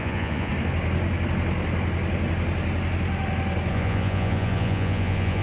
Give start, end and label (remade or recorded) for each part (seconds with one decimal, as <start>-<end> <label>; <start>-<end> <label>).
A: 0.0-0.5 remade; 0.5-3.7 recorded; 3.7-5.4 remade